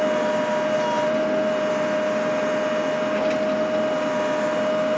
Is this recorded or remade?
recorded